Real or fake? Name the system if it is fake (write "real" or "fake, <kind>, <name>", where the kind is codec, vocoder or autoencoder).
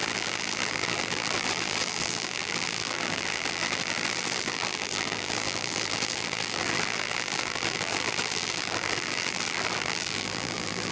fake, vocoder, BigVGAN v2